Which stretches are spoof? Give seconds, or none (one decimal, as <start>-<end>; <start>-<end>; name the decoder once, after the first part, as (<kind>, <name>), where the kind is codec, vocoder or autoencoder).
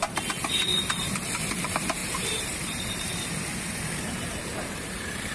0.7-1.4 (vocoder, BigVGAN v2); 2.0-5.3